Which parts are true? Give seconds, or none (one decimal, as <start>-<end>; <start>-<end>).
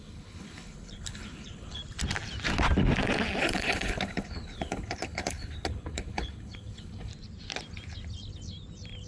1.8-3.4; 7.1-9.1